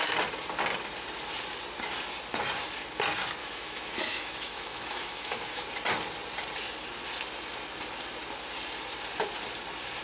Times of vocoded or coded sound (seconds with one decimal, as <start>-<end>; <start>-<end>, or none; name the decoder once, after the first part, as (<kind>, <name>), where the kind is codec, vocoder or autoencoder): 3.4-5.6 (autoencoder, DAC-VAE)